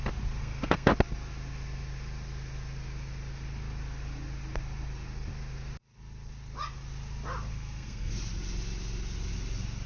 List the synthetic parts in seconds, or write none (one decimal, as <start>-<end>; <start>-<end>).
0.4-0.9; 7.5-8.1